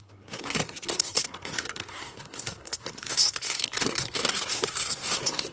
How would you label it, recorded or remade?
remade